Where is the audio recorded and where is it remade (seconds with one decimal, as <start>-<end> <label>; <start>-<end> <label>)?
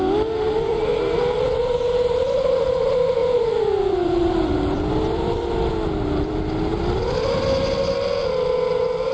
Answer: 0.0-3.2 recorded; 3.2-5.7 remade; 5.7-9.1 recorded